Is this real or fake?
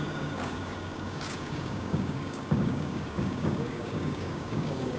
fake